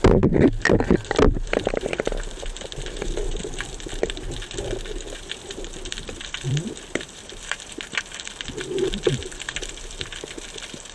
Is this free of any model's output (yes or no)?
no